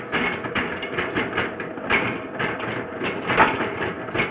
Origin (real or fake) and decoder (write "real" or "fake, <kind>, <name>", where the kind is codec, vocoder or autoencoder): real